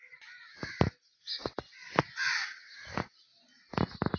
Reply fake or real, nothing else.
real